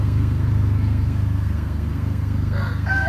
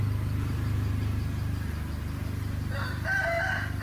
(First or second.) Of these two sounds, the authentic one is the second